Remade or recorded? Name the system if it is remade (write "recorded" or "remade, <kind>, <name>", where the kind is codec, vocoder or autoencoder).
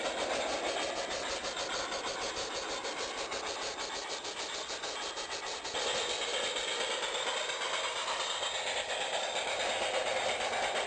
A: recorded